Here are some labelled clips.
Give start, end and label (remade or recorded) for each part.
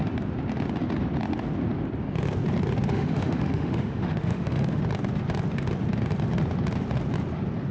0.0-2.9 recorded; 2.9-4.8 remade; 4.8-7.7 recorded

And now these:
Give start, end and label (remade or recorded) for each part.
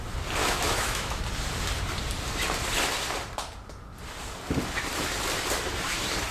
0.0-0.4 recorded; 0.4-1.2 remade; 1.2-6.3 recorded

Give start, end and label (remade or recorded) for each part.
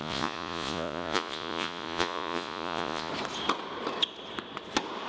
0.0-3.1 remade; 3.1-5.1 recorded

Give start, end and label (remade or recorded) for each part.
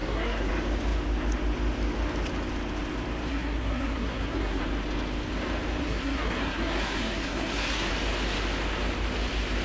0.0-0.5 remade; 0.5-3.3 recorded; 3.3-4.6 remade; 4.6-5.8 recorded; 5.8-7.9 remade; 7.9-9.6 recorded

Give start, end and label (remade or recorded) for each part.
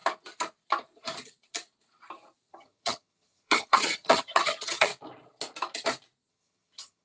0.0-2.5 recorded; 2.5-4.9 remade; 4.9-6.3 recorded; 6.3-7.0 remade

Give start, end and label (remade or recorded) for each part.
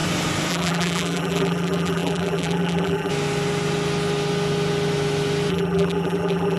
0.0-0.5 recorded; 0.5-3.1 remade; 3.1-5.5 recorded; 5.5-6.6 remade